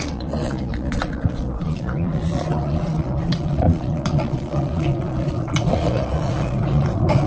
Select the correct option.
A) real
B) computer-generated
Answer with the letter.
B